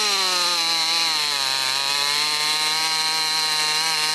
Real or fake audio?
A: real